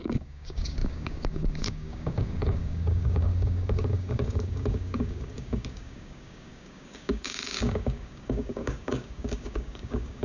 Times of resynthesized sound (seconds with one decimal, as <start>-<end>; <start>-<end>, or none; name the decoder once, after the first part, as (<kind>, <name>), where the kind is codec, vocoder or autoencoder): 0.0-10.2 (codec, DAC)